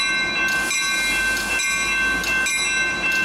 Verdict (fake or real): real